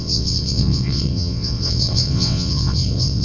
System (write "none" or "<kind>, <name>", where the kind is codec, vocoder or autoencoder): vocoder, WaveNeXt